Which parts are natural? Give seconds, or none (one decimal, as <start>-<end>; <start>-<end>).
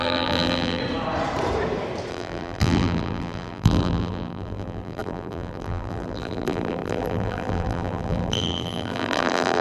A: 0.8-2.1